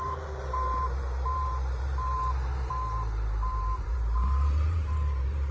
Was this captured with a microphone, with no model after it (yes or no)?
no